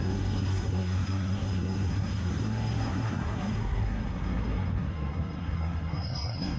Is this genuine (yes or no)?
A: no